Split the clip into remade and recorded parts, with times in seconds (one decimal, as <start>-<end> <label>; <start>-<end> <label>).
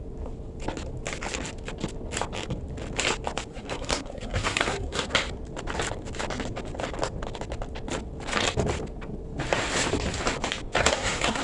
0.0-3.5 recorded; 3.5-5.1 remade; 5.1-10.8 recorded; 10.8-11.4 remade